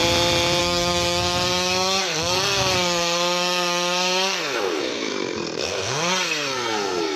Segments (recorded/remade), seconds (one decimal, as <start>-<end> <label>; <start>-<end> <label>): 0.0-0.6 recorded; 0.6-7.2 remade